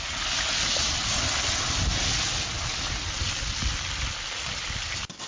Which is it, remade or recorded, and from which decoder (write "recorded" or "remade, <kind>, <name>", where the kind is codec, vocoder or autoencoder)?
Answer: recorded